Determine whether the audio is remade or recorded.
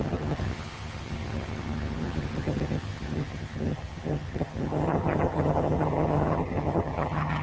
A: remade